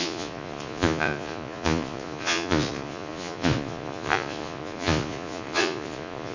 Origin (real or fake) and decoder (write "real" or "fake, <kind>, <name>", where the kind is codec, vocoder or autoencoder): fake, vocoder, Vocos